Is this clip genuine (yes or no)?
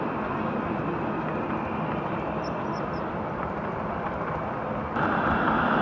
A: yes